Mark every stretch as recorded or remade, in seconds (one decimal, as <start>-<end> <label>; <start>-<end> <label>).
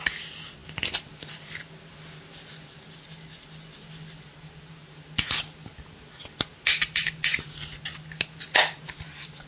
0.0-9.5 recorded